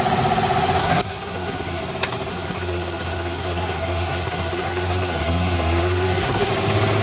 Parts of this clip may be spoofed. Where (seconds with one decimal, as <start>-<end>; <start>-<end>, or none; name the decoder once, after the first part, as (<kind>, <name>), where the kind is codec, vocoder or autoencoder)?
0.8-1.8 (codec, SNAC); 2.3-6.5